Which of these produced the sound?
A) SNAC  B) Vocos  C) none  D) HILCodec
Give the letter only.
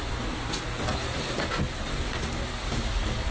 C